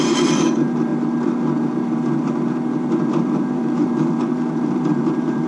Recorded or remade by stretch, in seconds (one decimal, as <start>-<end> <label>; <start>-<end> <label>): 0.0-0.9 remade; 0.9-1.6 recorded; 1.6-5.5 remade